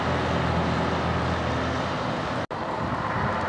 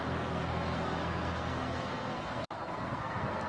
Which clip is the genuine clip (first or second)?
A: first